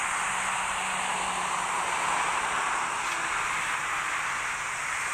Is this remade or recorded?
recorded